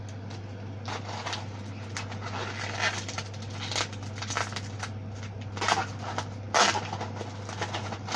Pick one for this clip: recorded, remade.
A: recorded